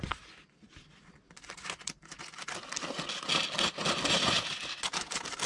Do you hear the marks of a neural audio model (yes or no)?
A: no